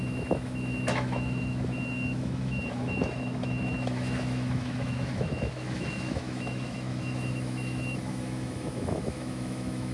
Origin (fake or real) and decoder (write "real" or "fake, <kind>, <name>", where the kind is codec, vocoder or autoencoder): fake, autoencoder, DAC-VAE